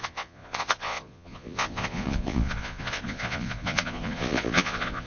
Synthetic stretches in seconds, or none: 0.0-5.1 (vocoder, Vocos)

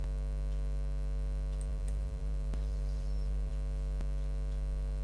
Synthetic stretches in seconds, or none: 1.7-3.5 (vocoder, BigVGAN v2)

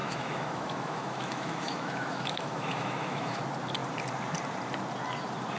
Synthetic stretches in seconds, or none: 0.0-3.4 (autoencoder, DAC-VAE)

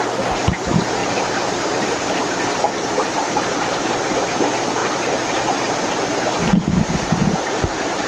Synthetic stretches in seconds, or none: 1.0-3.6 (vocoder, BigVGAN v2); 6.5-8.1

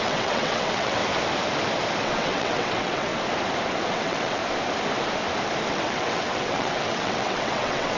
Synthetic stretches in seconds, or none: 0.0-1.0 (vocoder, WaveNeXt); 2.0-3.1; 3.9-4.4; 5.7-8.0

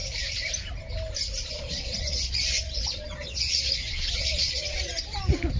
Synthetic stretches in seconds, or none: 1.5-4.9 (vocoder, Vocos)

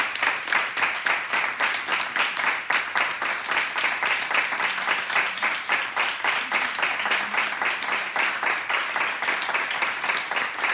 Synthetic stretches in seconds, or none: none